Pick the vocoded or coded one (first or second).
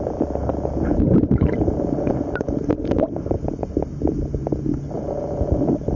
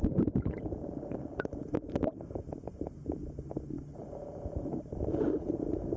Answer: second